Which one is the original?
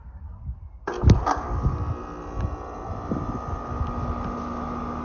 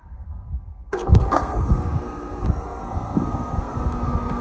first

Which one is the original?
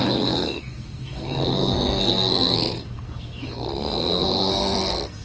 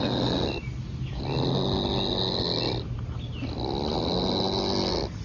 second